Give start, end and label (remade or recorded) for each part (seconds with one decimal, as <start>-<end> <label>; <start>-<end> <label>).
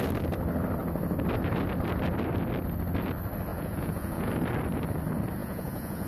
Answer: 0.0-3.5 recorded; 3.5-4.3 remade; 4.3-5.4 recorded; 5.4-6.1 remade